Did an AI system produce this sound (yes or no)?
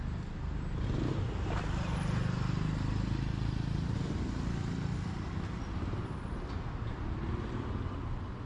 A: no